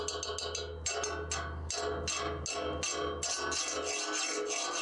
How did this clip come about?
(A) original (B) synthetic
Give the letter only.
A